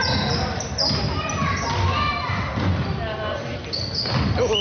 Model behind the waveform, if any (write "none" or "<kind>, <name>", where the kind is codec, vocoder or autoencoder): none